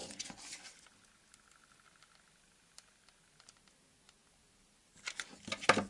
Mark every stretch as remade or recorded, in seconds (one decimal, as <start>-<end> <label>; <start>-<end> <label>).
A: 0.0-0.6 remade; 0.6-5.9 recorded